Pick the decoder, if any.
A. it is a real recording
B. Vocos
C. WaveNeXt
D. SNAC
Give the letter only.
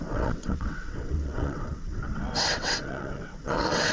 C